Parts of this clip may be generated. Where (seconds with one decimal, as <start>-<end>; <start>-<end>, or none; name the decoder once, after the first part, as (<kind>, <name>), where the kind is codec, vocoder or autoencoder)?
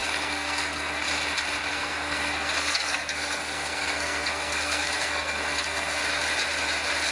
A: 0.0-1.0 (codec, SNAC); 1.7-6.0